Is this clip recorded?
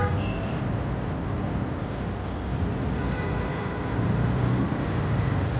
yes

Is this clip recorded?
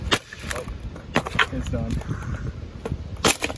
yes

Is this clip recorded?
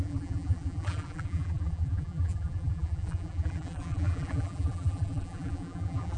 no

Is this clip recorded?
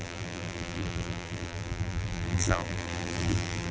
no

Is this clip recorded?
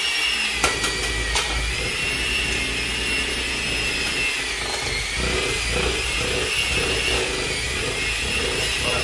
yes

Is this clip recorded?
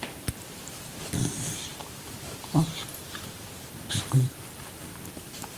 no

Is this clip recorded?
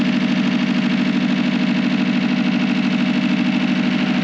yes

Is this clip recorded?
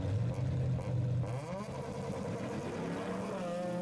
yes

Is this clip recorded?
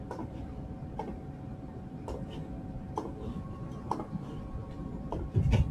no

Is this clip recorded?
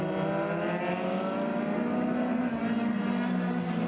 yes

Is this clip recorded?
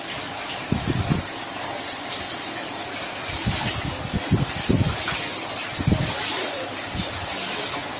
yes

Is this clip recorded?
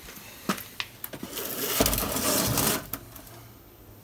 yes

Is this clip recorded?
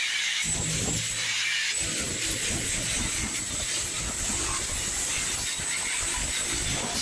yes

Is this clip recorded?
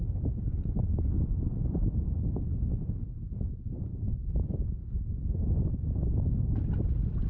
no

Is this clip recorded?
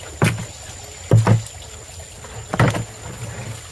yes